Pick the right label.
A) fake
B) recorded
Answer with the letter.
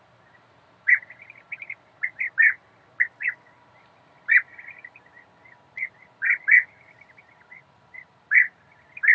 B